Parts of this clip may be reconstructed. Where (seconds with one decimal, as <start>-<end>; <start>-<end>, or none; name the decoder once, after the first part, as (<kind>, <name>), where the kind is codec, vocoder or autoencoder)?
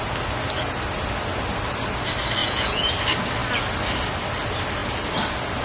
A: 2.4-2.9 (vocoder, Vocos)